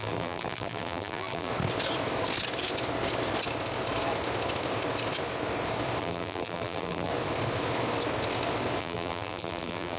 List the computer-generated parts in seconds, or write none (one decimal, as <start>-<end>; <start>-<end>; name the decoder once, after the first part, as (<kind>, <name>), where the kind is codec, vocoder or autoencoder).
0.0-1.5 (vocoder, BigVGAN v2); 6.0-7.1; 8.8-10.0